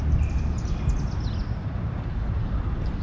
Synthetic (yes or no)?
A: no